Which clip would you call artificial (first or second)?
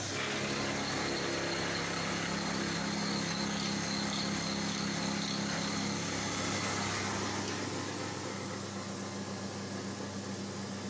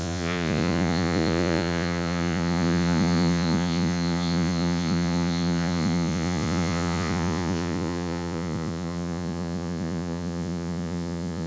second